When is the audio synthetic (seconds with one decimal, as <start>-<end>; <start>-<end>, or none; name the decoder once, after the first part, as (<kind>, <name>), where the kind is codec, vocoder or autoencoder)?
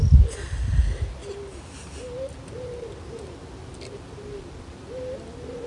none